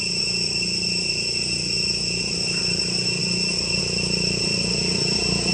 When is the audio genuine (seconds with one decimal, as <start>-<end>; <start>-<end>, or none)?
0.0-5.5